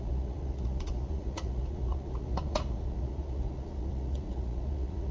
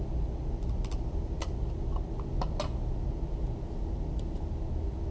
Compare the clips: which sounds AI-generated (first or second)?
first